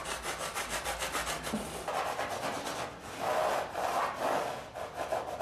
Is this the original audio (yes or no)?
yes